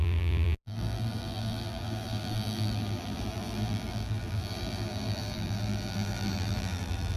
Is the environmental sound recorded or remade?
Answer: remade